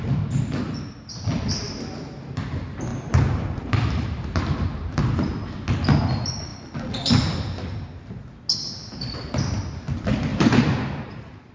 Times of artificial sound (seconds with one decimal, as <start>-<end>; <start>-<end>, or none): 2.9-5.0; 10.3-11.5

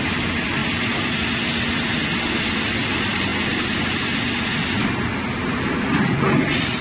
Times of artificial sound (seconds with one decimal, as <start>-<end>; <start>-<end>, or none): 0.0-0.6; 2.9-3.3

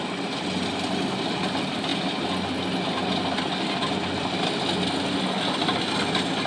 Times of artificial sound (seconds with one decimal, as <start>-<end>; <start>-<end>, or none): none